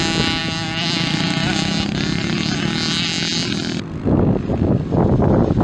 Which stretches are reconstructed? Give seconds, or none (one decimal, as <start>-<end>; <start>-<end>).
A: none